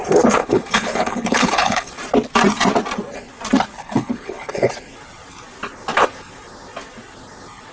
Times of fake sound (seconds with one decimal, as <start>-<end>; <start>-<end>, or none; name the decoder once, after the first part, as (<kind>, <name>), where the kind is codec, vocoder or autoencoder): 0.4-1.9 (codec, HILCodec); 3.8-4.7